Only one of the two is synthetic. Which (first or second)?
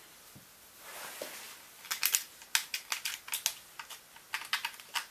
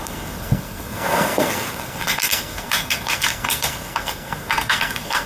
second